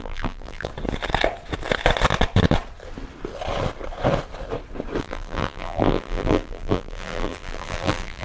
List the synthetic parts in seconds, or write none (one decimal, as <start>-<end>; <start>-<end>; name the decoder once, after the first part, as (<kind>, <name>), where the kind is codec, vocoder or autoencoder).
0.0-0.7 (vocoder, BigVGAN v2); 5.0-8.2